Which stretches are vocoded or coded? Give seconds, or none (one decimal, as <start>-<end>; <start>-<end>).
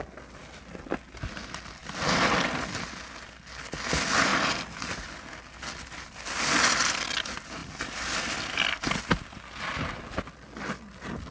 none